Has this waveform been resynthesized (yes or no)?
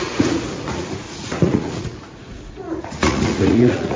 yes